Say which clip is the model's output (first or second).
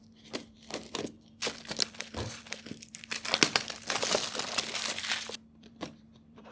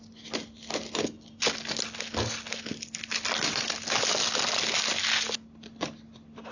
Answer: first